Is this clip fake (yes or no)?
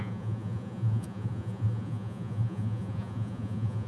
yes